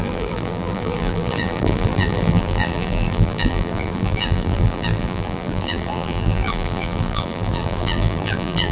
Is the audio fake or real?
fake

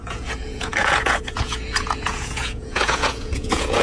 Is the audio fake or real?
fake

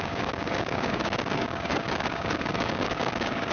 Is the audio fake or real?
fake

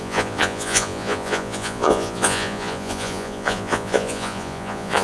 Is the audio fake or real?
fake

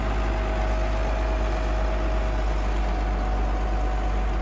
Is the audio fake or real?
real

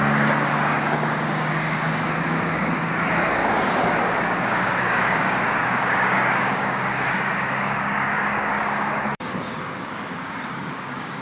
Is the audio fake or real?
fake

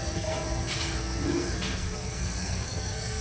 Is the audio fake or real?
fake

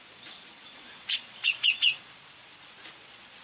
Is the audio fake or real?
fake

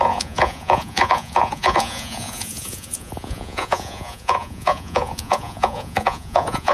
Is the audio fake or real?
fake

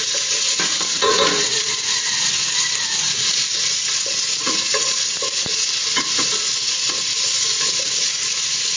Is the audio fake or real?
fake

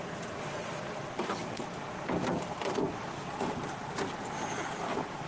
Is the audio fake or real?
real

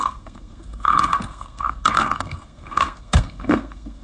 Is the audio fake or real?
fake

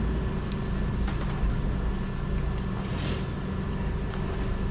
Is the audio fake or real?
real